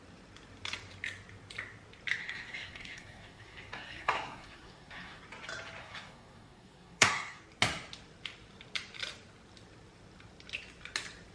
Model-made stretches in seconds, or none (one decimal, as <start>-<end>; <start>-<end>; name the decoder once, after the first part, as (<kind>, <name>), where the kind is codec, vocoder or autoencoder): 2.2-5.2 (codec, SNAC); 5.8-7.4